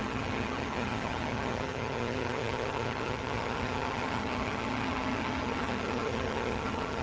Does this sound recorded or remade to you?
remade